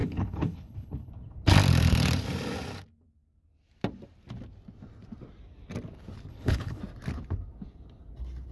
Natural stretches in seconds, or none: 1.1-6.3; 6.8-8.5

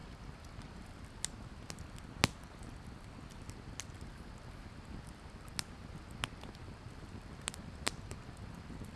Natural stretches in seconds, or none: 0.0-9.0

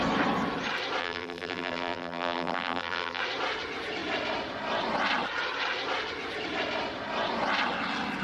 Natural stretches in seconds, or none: 0.0-1.0; 3.2-8.2

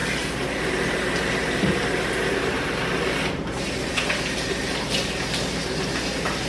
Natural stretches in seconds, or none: 3.9-6.5

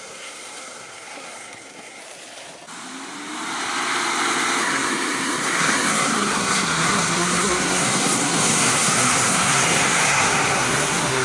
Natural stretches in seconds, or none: 2.0-4.6

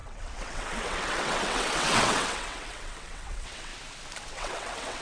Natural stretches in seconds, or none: 3.7-4.3